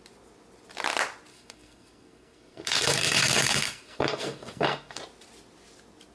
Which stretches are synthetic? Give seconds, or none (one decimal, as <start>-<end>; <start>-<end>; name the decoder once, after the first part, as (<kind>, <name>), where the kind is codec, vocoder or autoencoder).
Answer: 1.3-5.0 (codec, SNAC)